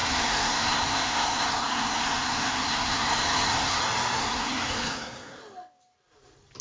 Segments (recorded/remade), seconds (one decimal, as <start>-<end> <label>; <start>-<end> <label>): 0.0-3.8 remade; 3.8-4.2 recorded; 4.2-5.4 remade; 5.4-6.6 recorded